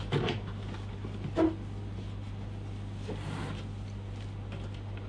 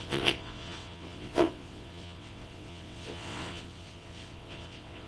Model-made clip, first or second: second